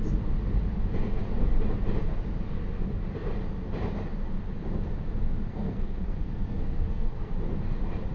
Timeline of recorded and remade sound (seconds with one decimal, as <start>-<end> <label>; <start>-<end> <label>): 0.0-5.5 recorded; 5.5-7.3 remade; 7.3-8.1 recorded